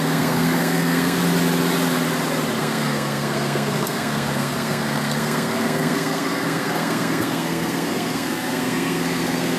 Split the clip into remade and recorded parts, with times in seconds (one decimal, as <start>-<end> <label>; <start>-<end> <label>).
0.0-1.2 remade; 1.2-2.6 recorded; 2.6-9.6 remade